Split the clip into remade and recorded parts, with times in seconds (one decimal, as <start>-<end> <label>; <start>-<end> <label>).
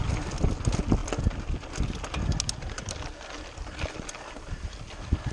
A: 0.0-5.3 recorded